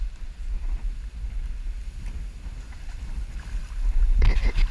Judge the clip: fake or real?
real